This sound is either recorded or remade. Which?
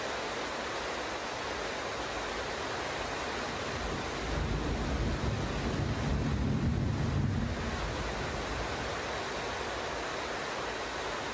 recorded